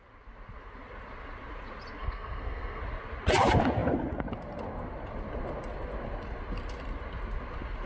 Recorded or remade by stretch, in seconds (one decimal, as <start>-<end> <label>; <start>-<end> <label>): 0.0-2.0 recorded; 2.0-2.8 remade; 2.8-7.9 recorded